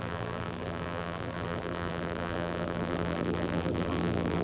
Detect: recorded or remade remade